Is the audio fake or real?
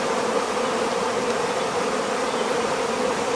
fake